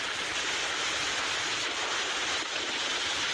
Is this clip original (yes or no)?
yes